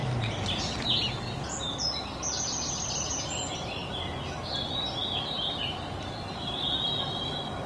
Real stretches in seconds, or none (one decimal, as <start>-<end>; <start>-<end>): 0.0-7.7